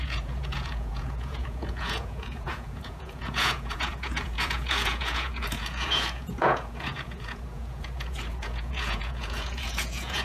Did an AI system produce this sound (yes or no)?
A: yes